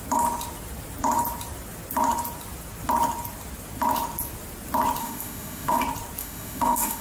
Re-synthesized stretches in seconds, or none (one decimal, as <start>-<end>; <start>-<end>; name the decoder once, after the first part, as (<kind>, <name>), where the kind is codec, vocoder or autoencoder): 5.0-5.8 (autoencoder, DAC-VAE); 6.2-7.0